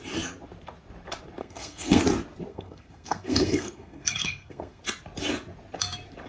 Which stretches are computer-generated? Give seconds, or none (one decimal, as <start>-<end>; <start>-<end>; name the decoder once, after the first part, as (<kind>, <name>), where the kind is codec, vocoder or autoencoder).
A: 1.4-2.0 (codec, SNAC); 2.5-4.8